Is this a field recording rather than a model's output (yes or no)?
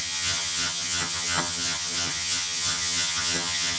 no